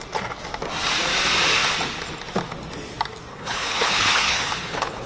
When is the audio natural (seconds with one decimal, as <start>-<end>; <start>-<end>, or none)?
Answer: 0.0-3.3